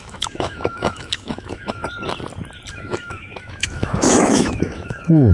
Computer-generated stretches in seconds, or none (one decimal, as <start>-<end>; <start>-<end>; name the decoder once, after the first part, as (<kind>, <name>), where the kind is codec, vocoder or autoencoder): 0.0-1.8 (autoencoder, DAC-VAE); 2.7-5.3